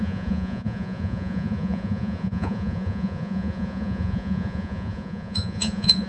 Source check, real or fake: fake